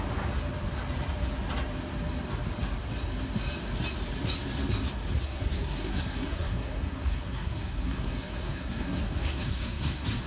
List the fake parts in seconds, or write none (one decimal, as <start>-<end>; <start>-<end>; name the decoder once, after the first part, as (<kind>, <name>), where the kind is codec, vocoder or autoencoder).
5.2-10.3 (codec, SNAC)

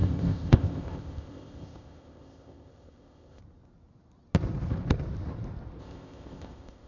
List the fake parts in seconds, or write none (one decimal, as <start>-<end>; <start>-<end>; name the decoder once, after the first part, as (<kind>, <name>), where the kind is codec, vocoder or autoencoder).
0.0-3.4 (codec, ZipCodec); 5.8-6.9

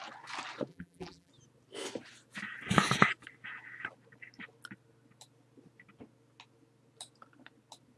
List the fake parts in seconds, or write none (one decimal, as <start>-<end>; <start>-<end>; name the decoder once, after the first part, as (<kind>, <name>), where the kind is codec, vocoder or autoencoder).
0.7-1.3 (vocoder, BigVGAN v2)

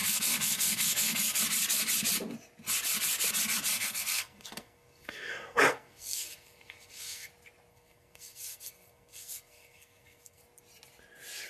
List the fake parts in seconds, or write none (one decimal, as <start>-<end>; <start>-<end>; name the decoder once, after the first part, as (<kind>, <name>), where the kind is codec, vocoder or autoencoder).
0.0-1.4 (codec, SNAC); 3.7-7.3; 7.7-10.4

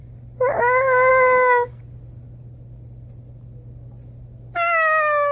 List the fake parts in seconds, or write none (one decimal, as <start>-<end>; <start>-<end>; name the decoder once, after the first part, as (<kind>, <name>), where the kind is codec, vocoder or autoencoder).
1.1-1.8 (codec, SNAC)

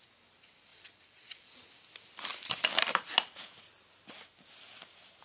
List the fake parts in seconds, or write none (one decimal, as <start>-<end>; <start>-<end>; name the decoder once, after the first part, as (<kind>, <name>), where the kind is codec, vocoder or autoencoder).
0.7-1.5 (vocoder, Vocos)

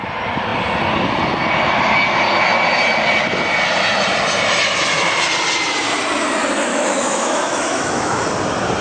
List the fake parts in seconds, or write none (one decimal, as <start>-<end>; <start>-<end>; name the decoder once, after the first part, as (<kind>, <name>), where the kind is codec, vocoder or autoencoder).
6.7-8.2 (autoencoder, DAC-VAE)